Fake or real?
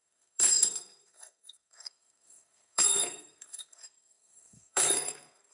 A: fake